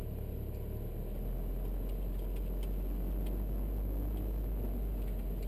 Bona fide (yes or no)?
yes